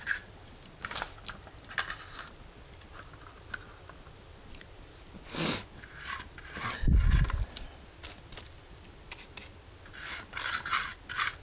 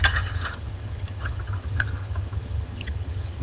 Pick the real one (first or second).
first